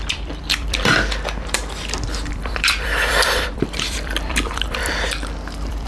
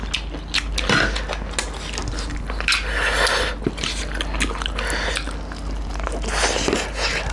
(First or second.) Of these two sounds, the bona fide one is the second